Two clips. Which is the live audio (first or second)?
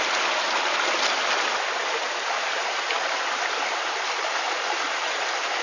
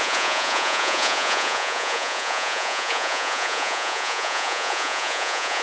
first